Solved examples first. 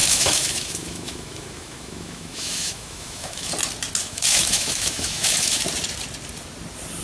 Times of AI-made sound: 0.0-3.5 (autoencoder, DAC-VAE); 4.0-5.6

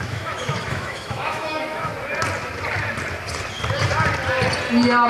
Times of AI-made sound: 0.0-1.9 (autoencoder, DAC-VAE)

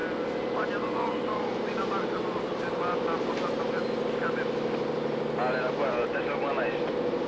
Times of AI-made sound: none

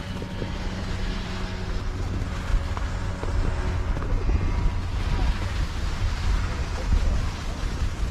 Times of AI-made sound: none

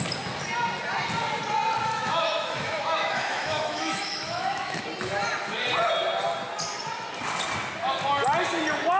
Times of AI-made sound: 1.9-4.8 (autoencoder, DAC-VAE)

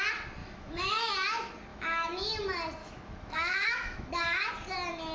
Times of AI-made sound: 0.4-1.1 (autoencoder, DAC-VAE); 1.7-2.3; 2.8-4.5